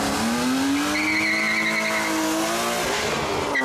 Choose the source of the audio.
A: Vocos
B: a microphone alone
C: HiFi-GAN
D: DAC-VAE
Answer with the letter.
B